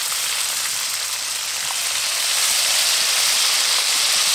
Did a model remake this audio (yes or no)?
yes